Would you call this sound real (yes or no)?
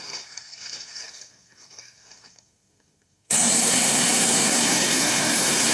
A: no